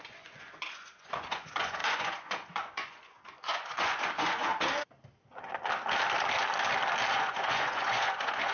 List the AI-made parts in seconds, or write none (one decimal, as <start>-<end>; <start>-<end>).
0.0-4.5; 7.1-8.5